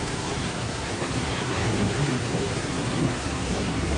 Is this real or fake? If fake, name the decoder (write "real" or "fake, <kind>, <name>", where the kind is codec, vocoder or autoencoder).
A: fake, codec, SNAC